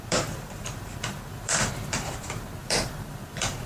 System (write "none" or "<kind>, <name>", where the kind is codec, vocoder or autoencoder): vocoder, BigVGAN v2